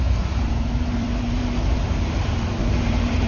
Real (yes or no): no